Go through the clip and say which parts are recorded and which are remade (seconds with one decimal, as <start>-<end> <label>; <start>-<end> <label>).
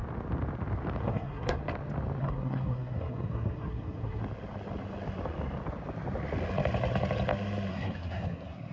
0.0-1.0 recorded; 1.0-1.6 remade; 1.6-2.2 recorded; 2.2-4.2 remade; 4.2-7.7 recorded; 7.7-8.7 remade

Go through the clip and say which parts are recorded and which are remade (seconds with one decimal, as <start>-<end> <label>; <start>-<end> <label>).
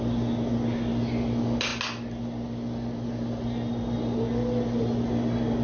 0.0-5.6 recorded